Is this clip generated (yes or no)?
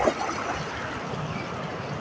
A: no